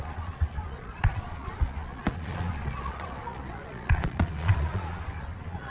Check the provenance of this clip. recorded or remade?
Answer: remade